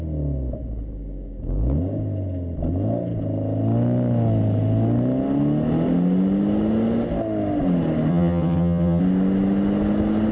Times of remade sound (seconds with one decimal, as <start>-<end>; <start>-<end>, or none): 8.1-9.0